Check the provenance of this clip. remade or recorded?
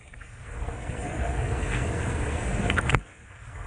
remade